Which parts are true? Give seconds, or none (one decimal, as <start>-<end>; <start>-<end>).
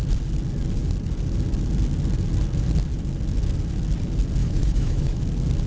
0.0-4.4; 5.2-5.7